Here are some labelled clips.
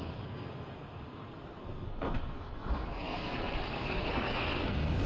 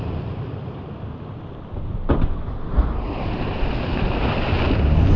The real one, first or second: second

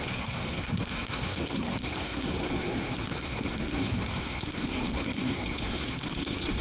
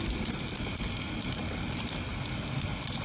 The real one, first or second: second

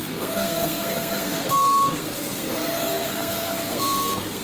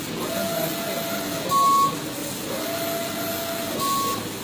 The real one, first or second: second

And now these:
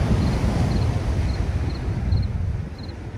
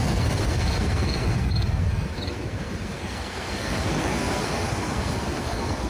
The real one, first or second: first